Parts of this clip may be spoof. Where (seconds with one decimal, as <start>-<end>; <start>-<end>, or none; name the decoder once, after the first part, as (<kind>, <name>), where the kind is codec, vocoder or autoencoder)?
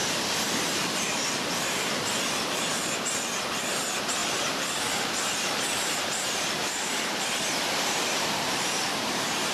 0.0-2.6 (vocoder, BigVGAN v2); 4.2-9.5